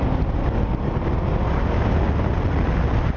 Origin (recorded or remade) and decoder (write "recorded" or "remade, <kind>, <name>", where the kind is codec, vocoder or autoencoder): recorded